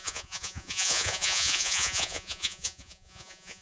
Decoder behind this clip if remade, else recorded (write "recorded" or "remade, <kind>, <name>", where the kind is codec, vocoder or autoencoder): remade, vocoder, Vocos